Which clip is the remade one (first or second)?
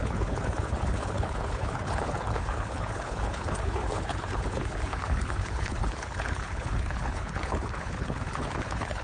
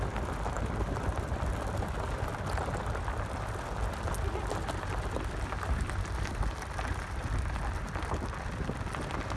first